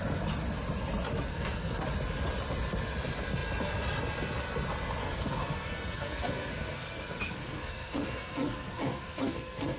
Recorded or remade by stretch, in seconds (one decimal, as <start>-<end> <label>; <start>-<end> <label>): 0.0-1.3 recorded; 1.3-1.8 remade; 1.8-5.0 recorded; 5.0-9.8 remade